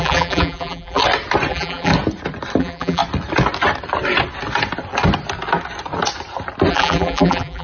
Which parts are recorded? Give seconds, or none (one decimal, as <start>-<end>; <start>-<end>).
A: 1.0-1.5; 1.9-2.6; 3.0-6.7